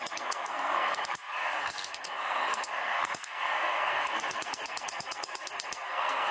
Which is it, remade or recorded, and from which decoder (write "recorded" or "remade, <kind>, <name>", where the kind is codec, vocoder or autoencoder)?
remade, codec, SNAC